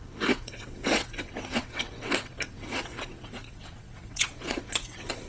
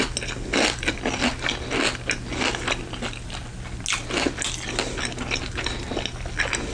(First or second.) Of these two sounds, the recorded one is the second